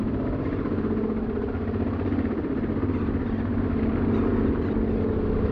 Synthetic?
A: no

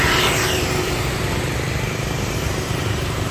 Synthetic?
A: yes